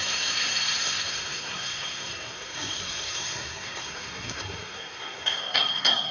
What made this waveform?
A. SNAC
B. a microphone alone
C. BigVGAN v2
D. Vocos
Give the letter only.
A